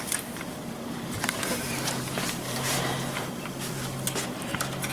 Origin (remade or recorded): remade